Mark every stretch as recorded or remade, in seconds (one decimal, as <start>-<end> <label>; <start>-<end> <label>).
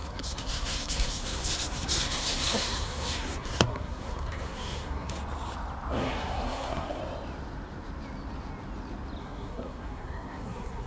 0.0-5.2 remade; 5.2-5.9 recorded; 5.9-7.0 remade; 7.0-9.2 recorded; 9.2-10.9 remade